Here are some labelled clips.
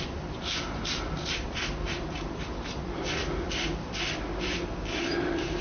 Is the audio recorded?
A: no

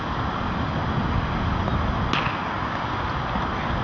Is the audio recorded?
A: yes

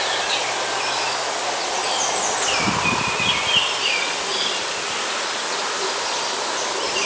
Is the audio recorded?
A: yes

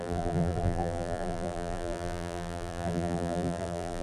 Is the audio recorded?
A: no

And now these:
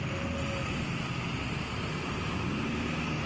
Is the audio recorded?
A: yes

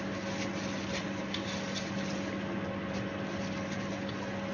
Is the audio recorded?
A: yes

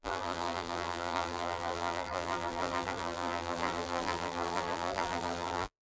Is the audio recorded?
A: no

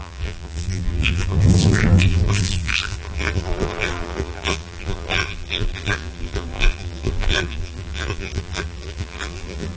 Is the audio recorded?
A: no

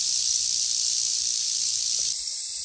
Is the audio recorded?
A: no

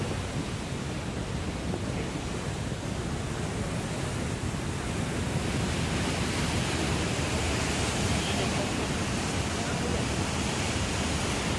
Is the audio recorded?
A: yes